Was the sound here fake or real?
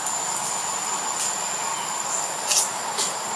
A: real